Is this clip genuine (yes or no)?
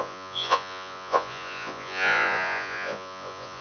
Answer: no